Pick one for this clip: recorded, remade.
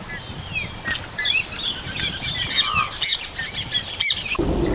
recorded